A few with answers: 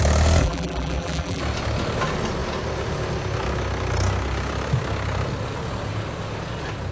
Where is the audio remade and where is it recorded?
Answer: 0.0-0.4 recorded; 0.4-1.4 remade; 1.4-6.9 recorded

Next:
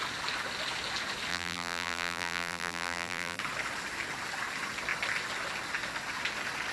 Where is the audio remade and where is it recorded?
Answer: 0.0-1.3 recorded; 1.3-3.4 remade; 3.4-6.7 recorded

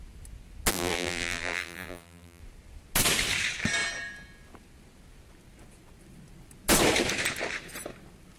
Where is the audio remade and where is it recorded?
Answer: 0.0-0.7 recorded; 0.7-2.4 remade; 2.4-8.4 recorded